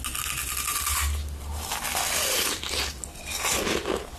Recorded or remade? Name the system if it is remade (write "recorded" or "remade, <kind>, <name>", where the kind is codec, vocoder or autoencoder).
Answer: recorded